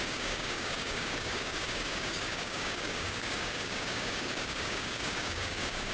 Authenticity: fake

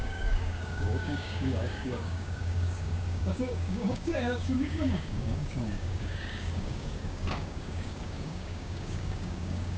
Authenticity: fake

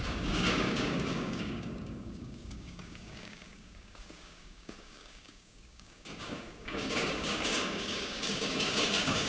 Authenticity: fake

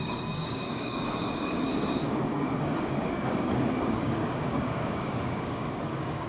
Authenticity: fake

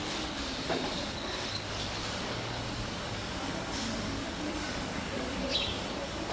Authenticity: fake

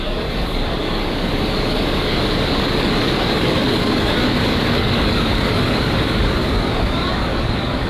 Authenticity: fake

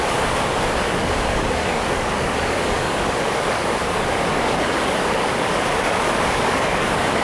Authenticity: fake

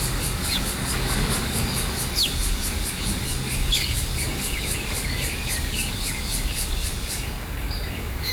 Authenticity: fake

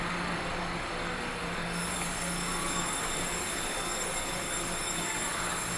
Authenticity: fake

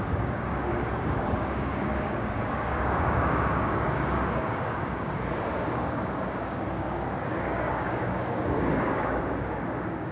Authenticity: fake